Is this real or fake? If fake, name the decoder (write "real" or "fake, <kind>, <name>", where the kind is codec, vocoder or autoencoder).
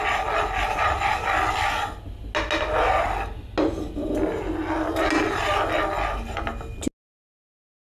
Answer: real